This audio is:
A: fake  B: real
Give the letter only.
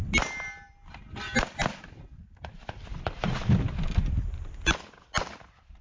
B